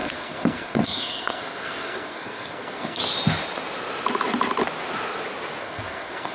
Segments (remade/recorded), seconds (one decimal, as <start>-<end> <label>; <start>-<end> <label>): 0.0-3.0 remade; 3.0-5.6 recorded; 5.6-6.3 remade